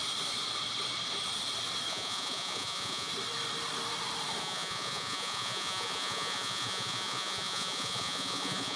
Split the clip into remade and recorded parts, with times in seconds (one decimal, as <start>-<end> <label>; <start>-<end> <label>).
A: 0.0-1.9 recorded; 1.9-3.1 remade; 3.1-4.4 recorded; 4.4-8.8 remade